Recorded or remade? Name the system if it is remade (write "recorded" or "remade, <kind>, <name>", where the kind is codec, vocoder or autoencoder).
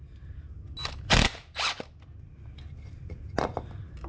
recorded